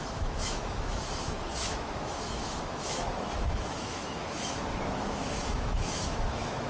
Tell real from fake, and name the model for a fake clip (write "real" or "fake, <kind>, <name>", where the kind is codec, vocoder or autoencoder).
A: fake, autoencoder, DAC-VAE